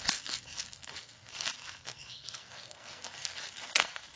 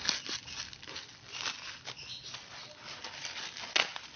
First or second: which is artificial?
first